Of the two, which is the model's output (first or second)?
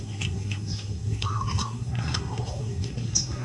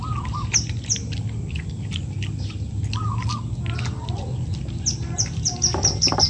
first